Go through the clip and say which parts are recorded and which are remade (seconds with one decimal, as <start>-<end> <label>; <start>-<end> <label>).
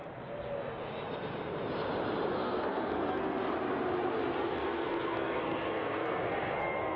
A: 0.0-2.3 recorded; 2.3-3.4 remade; 3.4-4.4 recorded; 4.4-7.0 remade